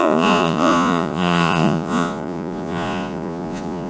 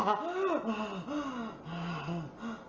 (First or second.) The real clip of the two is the second